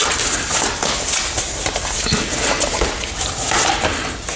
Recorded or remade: recorded